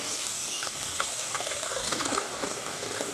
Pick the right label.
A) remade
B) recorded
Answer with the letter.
A